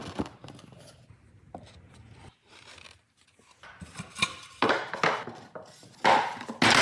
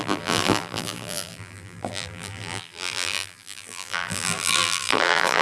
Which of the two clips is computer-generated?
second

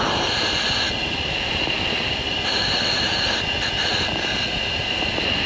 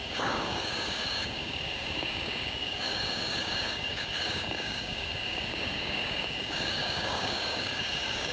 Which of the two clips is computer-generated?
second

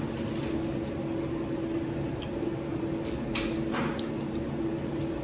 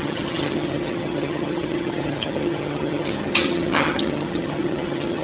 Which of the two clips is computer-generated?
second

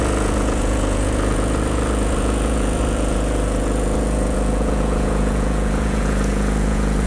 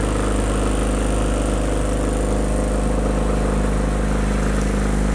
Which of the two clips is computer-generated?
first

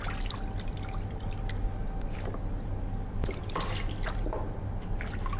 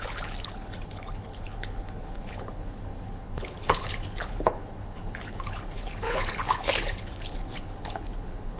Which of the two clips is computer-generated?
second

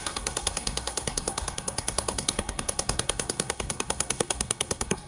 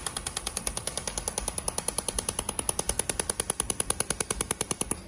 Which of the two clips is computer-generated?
first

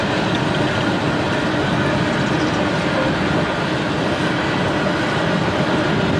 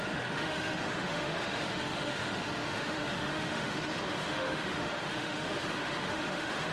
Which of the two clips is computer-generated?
second